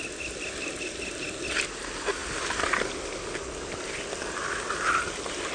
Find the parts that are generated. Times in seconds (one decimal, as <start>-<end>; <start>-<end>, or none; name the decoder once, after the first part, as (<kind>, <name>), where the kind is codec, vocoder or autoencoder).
none